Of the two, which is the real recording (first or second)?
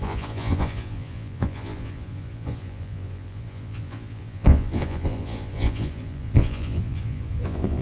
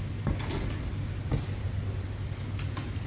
second